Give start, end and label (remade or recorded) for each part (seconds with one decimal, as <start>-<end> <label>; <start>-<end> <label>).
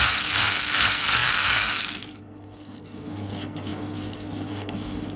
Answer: 0.0-5.2 remade